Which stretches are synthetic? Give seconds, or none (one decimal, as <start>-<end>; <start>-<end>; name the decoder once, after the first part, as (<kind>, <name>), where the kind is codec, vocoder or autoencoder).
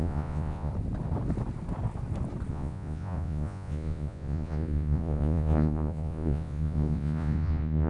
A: 0.0-0.7 (vocoder, Vocos); 2.5-7.9